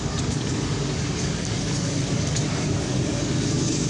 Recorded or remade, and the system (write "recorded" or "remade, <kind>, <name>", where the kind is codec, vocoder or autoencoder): remade, codec, DAC